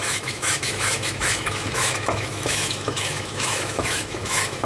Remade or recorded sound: remade